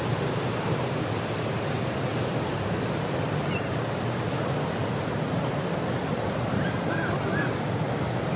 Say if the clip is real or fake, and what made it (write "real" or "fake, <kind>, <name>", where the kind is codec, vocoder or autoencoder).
real